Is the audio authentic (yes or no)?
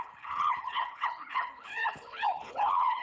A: no